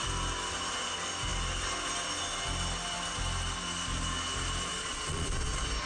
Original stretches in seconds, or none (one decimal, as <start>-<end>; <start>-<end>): 0.0-4.7; 5.5-5.9